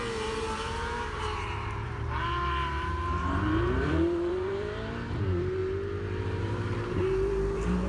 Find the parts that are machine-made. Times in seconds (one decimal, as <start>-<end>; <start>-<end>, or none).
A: 0.0-5.6; 6.4-7.9